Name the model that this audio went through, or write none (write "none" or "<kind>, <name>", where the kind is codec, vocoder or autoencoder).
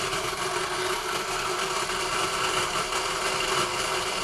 none